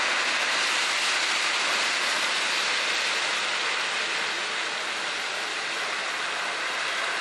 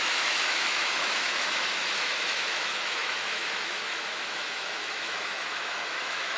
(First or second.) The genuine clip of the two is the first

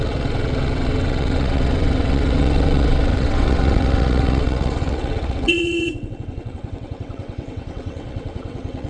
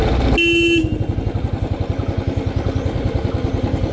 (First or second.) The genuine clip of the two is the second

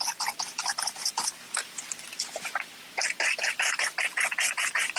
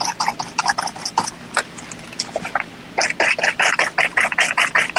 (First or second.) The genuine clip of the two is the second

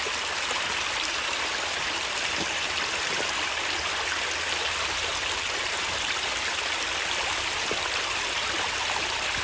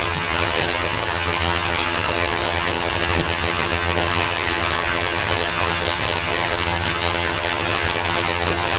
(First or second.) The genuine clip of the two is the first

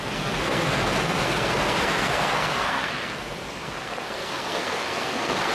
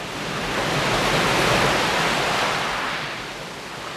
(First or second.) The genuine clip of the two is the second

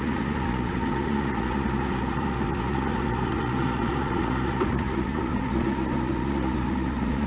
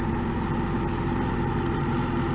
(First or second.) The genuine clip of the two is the second